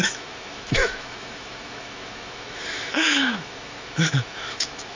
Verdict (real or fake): fake